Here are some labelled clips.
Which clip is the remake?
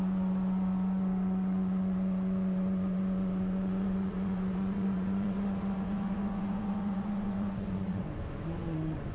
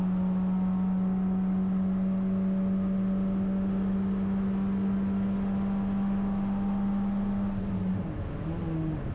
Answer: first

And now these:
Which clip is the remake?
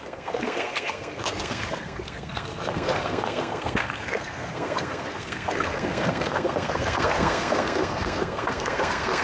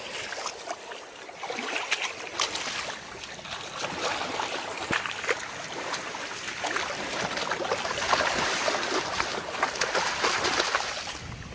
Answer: first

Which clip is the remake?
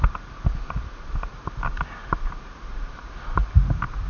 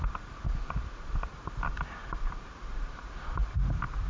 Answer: second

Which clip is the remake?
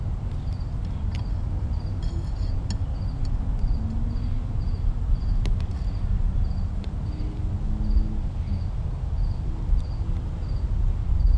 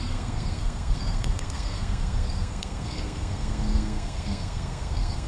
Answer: second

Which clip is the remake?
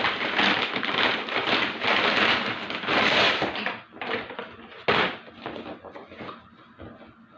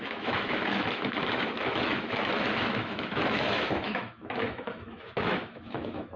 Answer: second